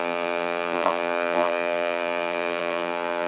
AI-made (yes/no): yes